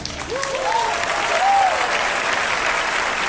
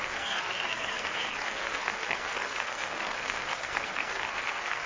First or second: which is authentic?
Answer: first